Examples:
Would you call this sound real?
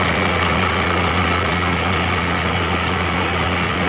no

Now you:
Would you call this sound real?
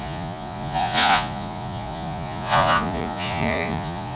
no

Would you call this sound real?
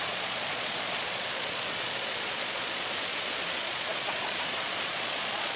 no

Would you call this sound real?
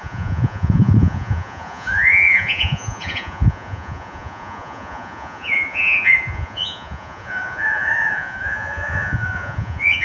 no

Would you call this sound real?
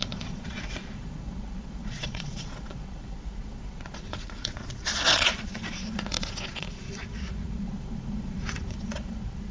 no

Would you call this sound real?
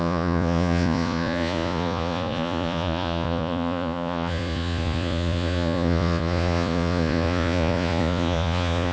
no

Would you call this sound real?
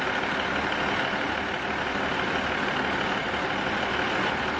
yes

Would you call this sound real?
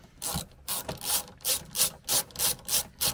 yes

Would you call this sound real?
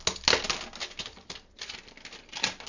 yes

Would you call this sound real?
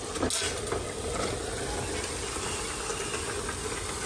yes